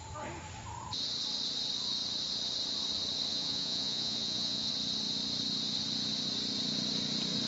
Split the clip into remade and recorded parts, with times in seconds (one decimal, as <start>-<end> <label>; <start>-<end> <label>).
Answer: 0.0-3.3 recorded; 3.3-4.7 remade; 4.7-7.5 recorded